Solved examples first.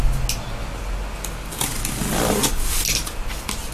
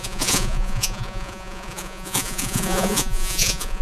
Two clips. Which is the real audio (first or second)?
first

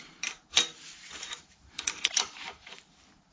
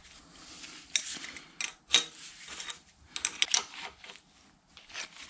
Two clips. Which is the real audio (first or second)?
second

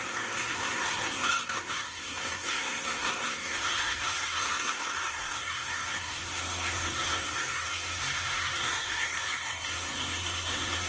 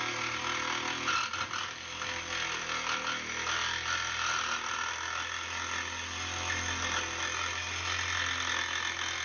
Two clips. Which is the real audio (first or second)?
second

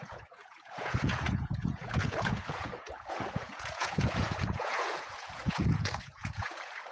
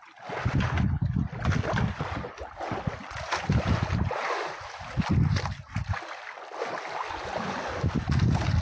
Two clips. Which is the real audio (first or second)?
second